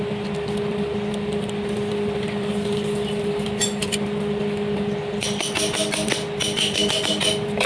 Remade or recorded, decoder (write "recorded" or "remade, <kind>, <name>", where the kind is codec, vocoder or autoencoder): recorded